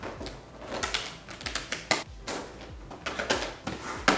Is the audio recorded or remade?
recorded